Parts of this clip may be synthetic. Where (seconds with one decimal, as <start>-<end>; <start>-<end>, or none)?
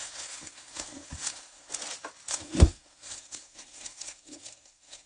0.0-1.7; 2.3-5.1